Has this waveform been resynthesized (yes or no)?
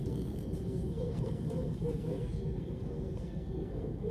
yes